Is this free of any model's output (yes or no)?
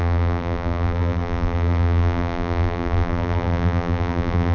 no